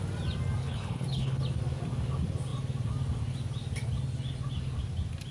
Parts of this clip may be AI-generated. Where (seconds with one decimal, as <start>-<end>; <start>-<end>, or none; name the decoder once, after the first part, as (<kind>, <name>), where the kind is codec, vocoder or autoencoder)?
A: 0.6-1.4 (codec, HILCodec)

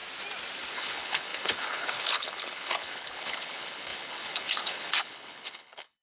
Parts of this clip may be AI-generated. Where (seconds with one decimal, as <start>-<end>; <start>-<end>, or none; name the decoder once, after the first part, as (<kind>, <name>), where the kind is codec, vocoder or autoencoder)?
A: 0.7-6.0 (codec, HILCodec)